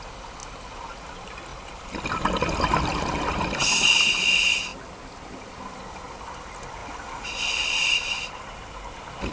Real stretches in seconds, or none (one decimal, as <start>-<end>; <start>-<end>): 0.0-9.3